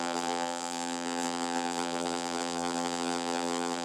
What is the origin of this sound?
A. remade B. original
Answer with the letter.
A